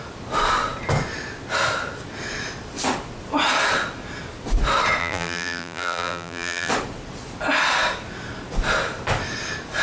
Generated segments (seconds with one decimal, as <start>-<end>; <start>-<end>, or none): 5.0-6.7